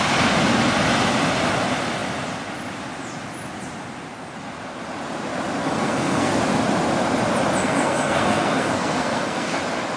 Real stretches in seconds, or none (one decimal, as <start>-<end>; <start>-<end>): 0.0-5.6; 6.3-7.6; 9.6-10.0